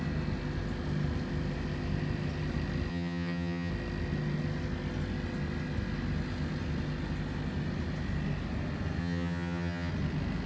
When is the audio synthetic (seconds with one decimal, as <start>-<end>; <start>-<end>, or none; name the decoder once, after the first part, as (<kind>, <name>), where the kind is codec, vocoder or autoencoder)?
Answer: 2.9-3.7 (vocoder, HiFi-GAN); 9.0-9.9